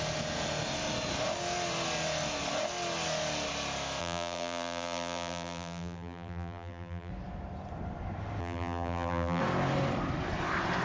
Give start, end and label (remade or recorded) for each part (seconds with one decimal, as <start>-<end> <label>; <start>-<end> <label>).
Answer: 0.0-4.0 recorded; 4.0-7.1 remade; 7.1-8.4 recorded; 8.4-9.4 remade; 9.4-10.8 recorded

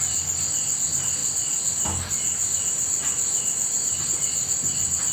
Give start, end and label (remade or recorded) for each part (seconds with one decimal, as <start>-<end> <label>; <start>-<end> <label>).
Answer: 0.0-1.2 recorded; 1.2-4.0 remade; 4.0-5.1 recorded

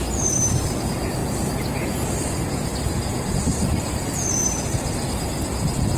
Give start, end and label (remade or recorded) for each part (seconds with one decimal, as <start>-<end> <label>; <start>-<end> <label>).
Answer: 0.0-1.2 remade; 1.2-2.2 recorded; 2.2-6.0 remade